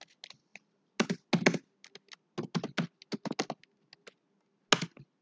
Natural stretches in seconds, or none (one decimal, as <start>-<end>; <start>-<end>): 0.0-5.2